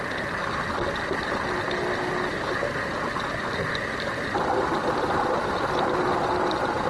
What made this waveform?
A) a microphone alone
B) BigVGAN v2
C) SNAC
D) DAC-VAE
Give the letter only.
A